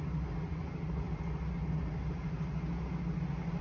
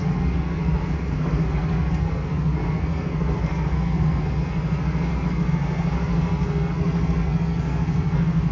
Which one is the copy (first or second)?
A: second